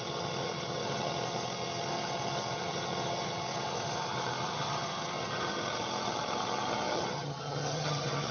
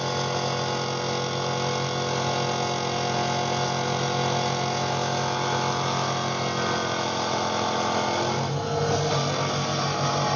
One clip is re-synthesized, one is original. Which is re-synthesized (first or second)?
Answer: first